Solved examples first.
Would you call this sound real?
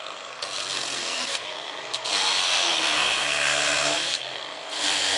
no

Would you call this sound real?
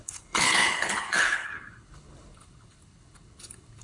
no